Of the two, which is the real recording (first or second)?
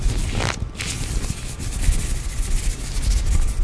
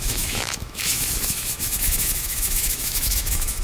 first